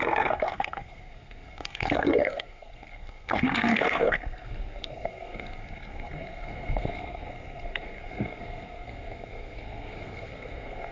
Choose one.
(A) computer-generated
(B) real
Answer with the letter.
A